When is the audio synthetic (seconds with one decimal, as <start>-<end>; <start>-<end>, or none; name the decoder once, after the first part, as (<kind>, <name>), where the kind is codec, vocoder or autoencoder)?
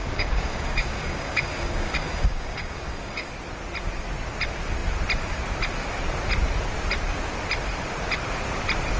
0.0-3.3 (codec, DAC)